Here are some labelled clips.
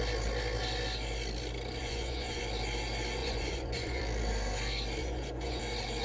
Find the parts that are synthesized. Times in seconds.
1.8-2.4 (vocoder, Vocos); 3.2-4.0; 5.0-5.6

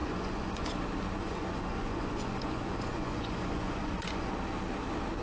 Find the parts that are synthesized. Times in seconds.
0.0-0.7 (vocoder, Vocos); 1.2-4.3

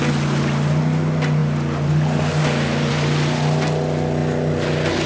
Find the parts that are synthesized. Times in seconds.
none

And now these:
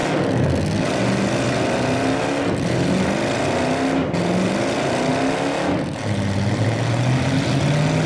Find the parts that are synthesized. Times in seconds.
none

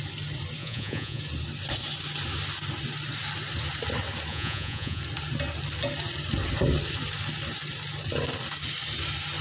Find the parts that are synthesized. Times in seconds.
0.6-1.2 (vocoder, Vocos); 4.3-5.0